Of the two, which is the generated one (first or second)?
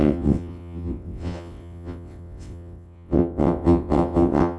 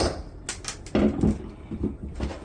first